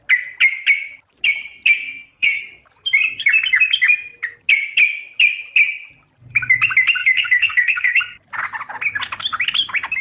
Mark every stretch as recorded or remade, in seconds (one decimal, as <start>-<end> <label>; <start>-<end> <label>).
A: 0.0-1.8 recorded; 1.8-2.4 remade; 2.4-7.0 recorded; 7.0-8.0 remade; 8.0-10.0 recorded